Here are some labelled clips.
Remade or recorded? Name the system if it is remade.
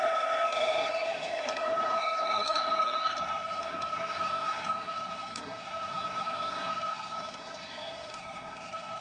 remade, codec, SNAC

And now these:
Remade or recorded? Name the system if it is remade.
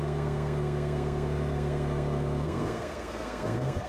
remade, codec, SNAC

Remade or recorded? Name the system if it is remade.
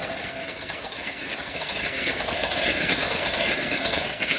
remade, codec, SNAC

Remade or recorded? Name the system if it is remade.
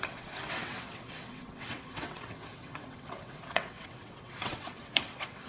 remade, vocoder, WaveNeXt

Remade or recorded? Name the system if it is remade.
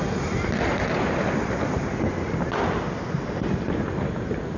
recorded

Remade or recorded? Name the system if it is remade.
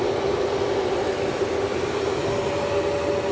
recorded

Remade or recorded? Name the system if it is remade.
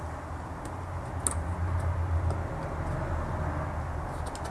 recorded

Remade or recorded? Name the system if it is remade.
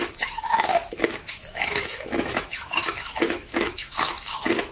remade, autoencoder, DAC-VAE